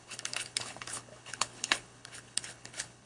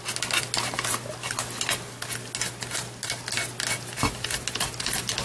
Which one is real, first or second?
second